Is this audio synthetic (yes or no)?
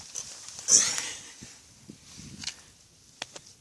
no